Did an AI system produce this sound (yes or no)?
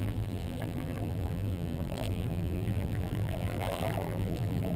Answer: yes